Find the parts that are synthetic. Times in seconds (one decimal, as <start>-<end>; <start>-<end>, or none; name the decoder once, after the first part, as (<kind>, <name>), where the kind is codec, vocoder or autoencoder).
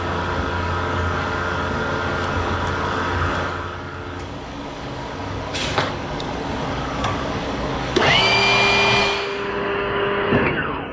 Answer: 0.0-8.4 (codec, DAC); 9.0-10.9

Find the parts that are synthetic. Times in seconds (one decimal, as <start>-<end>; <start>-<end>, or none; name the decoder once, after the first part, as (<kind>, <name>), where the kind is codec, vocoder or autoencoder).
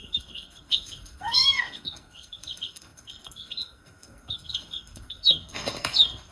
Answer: 0.0-6.3 (codec, SNAC)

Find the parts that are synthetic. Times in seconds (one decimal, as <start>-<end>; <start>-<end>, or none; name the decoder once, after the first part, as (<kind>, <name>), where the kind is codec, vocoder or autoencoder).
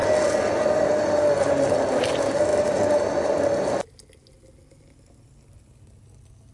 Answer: none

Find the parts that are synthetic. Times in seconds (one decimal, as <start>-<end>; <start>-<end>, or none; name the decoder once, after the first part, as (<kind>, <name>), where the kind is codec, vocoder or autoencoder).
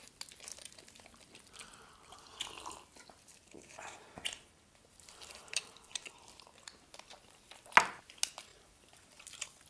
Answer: 3.3-6.1 (vocoder, BigVGAN v2); 8.5-9.2